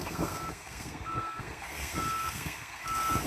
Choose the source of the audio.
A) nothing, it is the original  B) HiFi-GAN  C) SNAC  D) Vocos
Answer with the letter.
C